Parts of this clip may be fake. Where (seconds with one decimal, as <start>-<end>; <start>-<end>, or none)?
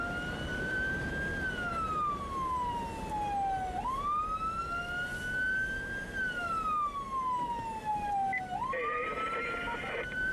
0.5-1.1; 7.9-10.3